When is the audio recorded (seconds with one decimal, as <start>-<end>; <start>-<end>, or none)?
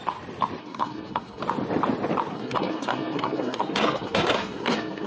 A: 0.0-0.6; 1.4-2.3